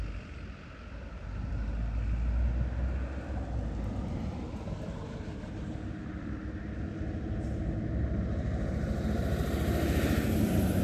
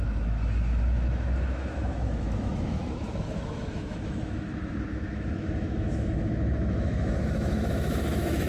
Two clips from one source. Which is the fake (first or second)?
second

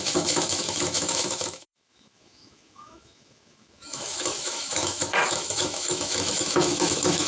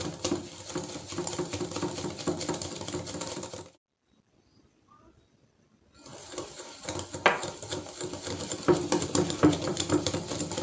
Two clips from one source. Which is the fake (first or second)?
first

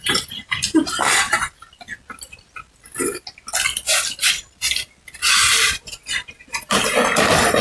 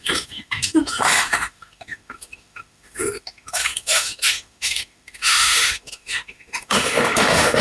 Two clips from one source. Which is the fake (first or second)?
second